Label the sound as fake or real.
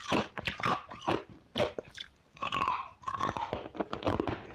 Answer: fake